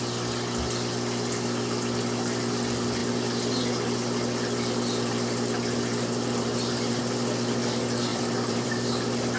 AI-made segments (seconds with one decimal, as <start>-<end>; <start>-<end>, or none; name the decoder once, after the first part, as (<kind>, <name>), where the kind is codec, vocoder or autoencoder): 8.1-8.7 (vocoder, BigVGAN v2)